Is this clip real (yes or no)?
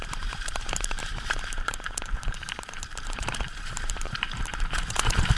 no